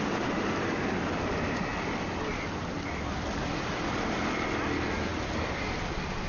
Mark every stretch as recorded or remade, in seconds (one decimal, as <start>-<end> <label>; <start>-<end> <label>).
0.0-6.3 recorded